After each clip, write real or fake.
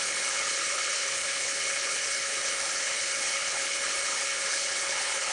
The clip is fake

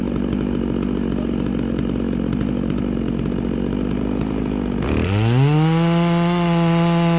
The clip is real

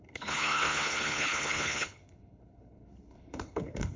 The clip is fake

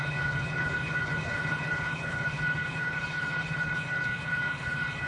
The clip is fake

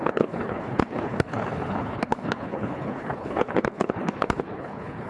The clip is fake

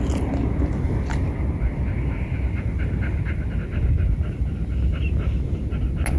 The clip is real